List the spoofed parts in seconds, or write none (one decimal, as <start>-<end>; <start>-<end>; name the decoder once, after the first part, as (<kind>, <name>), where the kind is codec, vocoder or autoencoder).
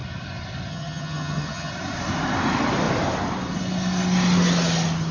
0.7-1.7 (vocoder, HiFi-GAN)